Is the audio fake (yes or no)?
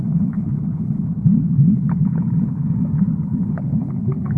yes